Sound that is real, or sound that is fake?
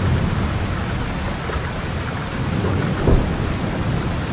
real